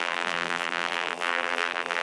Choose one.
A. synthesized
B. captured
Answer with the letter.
A